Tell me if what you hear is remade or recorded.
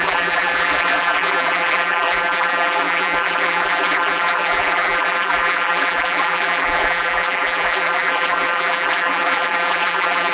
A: remade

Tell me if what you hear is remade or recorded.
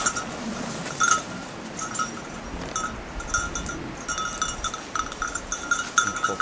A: recorded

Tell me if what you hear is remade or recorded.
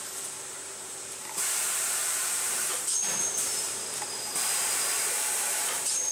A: remade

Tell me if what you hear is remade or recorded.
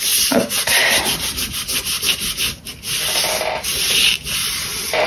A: remade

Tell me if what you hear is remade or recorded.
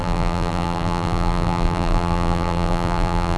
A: remade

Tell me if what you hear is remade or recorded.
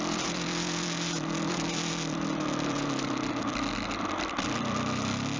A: remade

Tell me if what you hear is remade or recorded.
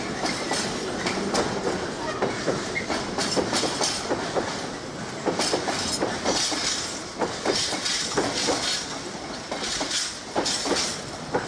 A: recorded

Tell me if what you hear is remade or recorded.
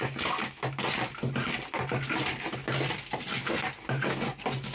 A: recorded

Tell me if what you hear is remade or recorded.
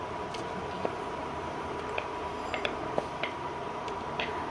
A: remade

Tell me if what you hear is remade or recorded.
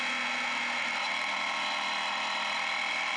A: recorded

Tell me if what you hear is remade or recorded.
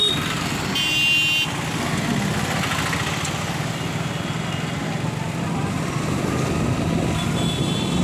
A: recorded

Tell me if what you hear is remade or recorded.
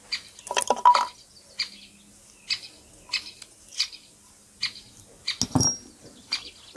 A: recorded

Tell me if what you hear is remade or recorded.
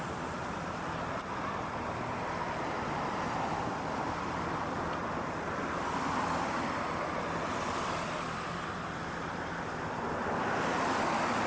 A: recorded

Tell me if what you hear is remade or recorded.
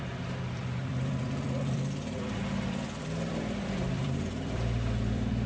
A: remade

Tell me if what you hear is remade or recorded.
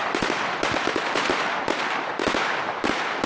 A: remade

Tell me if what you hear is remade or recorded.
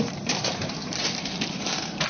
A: remade